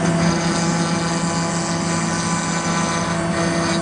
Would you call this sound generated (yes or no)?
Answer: no